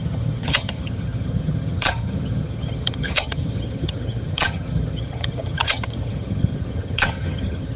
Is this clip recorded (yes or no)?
no